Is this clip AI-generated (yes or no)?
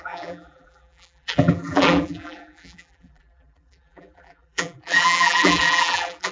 yes